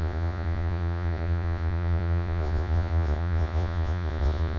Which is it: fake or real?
fake